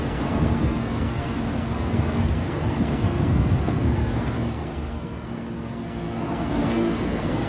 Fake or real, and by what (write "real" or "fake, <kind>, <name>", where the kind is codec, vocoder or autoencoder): fake, codec, SNAC